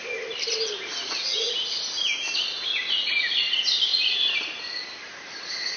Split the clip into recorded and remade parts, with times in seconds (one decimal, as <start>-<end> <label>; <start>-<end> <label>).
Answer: 0.0-5.8 recorded